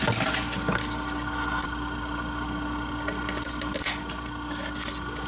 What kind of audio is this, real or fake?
real